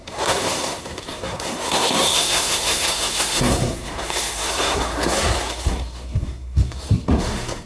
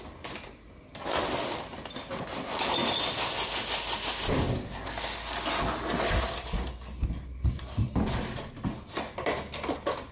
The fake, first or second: first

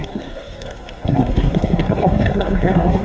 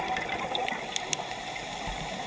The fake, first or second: first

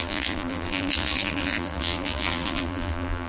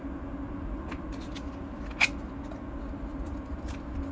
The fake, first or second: first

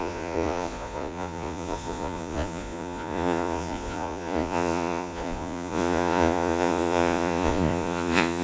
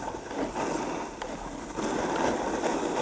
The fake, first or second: first